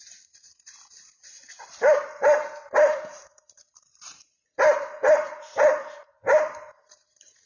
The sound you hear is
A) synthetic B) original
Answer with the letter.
A